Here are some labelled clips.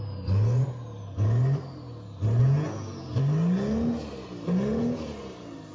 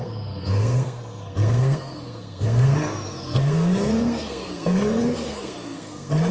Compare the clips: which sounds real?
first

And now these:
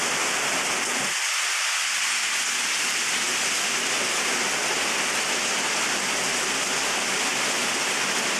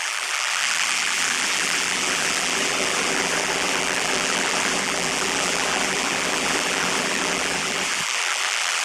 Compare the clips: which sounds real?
first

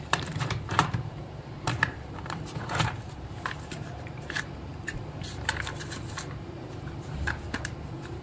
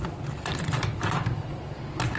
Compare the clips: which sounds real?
second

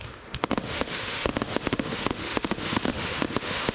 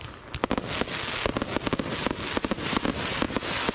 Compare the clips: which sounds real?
second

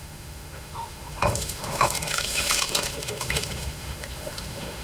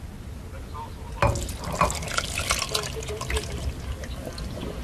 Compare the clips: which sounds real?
second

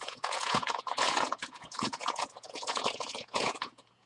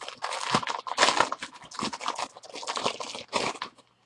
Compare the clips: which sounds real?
second